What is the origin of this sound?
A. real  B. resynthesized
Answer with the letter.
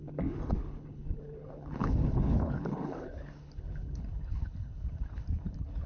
B